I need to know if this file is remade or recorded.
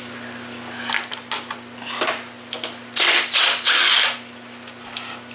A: recorded